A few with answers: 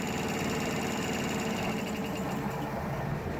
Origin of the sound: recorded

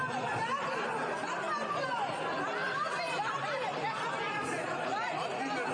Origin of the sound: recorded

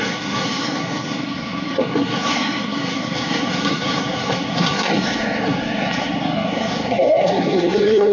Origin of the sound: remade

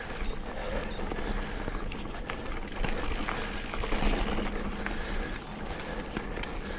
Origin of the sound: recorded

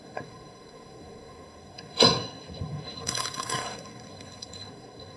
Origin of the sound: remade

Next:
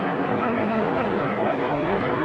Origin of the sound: remade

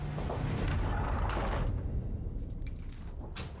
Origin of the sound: recorded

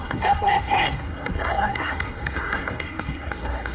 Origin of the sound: remade